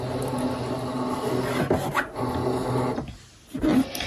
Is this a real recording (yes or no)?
yes